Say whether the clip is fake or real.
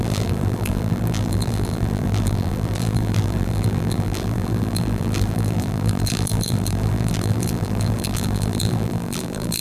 fake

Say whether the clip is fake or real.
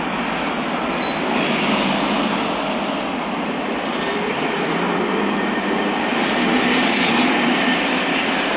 fake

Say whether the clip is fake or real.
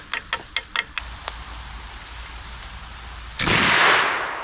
real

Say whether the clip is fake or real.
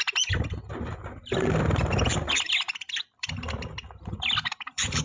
fake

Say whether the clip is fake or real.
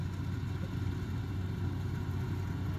real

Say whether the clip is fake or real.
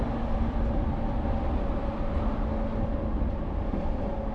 real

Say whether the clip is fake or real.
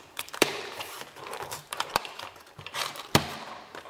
fake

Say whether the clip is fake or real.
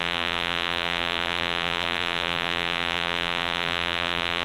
fake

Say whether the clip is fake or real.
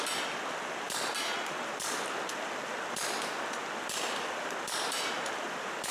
fake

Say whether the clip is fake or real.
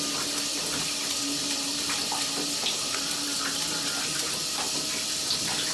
real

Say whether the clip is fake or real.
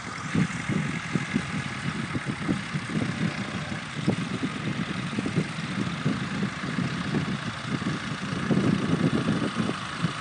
real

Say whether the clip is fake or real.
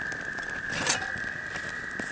real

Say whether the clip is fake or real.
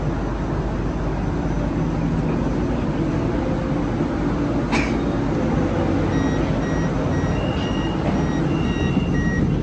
real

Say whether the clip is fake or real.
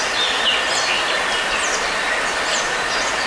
real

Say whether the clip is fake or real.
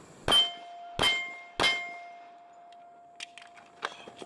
real